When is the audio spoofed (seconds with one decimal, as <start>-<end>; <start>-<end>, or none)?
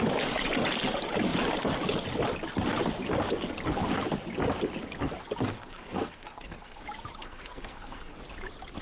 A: 5.5-6.8; 7.2-8.2